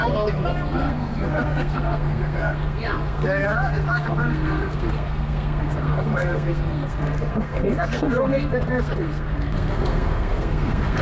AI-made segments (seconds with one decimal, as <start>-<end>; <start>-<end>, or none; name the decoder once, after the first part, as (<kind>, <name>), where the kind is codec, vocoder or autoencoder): 0.0-11.0 (codec, SNAC)